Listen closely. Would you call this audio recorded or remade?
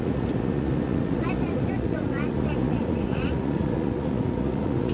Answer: remade